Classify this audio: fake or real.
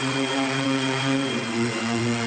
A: fake